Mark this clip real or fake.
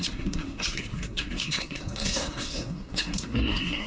fake